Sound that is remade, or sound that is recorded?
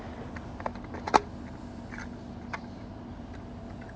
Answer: recorded